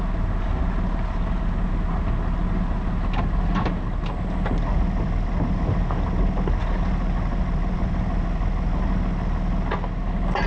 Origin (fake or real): real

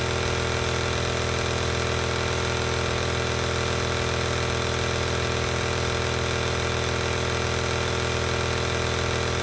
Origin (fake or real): real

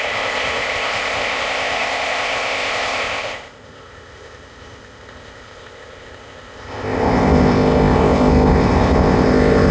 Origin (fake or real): fake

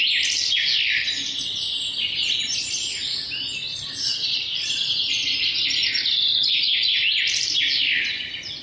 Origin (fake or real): real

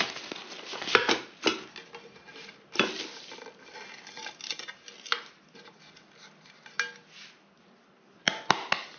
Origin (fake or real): real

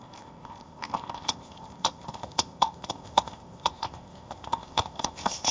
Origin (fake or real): fake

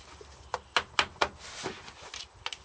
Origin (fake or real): real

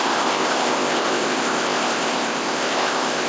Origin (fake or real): fake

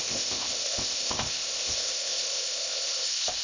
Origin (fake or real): fake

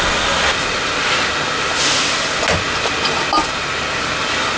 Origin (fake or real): real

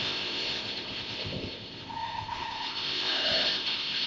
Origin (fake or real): fake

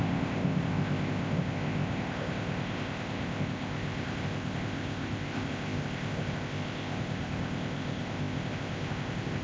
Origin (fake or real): fake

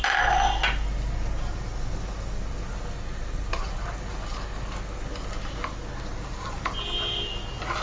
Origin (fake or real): real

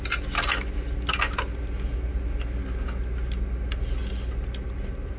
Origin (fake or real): real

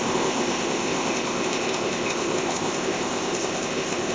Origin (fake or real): fake